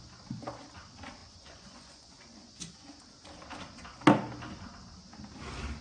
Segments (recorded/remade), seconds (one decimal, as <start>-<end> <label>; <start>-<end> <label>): 0.0-1.2 recorded; 1.2-3.0 remade; 3.0-5.8 recorded

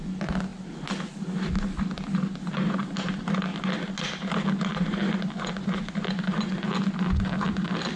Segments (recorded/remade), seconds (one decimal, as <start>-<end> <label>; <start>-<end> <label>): 0.0-0.5 remade; 0.5-3.0 recorded; 3.0-3.5 remade; 3.5-7.0 recorded; 7.0-8.0 remade

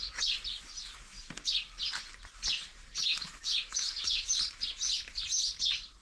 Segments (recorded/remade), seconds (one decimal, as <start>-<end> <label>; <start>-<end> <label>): 0.0-3.1 recorded; 3.1-4.3 remade; 4.3-6.0 recorded

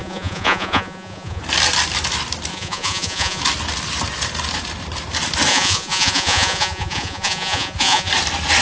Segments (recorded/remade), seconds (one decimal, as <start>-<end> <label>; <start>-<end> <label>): 0.0-1.4 remade; 1.4-2.5 recorded; 2.5-3.4 remade; 3.4-5.5 recorded; 5.5-8.1 remade; 8.1-8.6 recorded

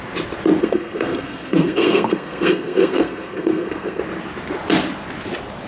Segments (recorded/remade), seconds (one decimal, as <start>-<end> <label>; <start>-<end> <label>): 0.0-0.6 recorded; 0.6-4.0 remade; 4.0-5.7 recorded

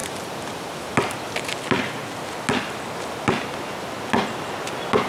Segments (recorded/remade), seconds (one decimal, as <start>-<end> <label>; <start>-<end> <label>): 0.0-5.1 recorded